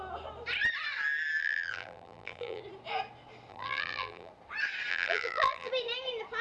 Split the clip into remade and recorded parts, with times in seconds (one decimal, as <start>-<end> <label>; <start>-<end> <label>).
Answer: 0.0-1.4 recorded; 1.4-2.6 remade; 2.6-3.5 recorded; 3.5-4.3 remade; 4.3-4.9 recorded; 4.9-5.7 remade; 5.7-6.4 recorded